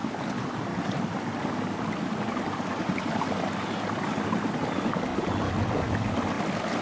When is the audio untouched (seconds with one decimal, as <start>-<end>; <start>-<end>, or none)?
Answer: 0.0-6.8